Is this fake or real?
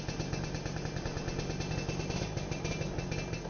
real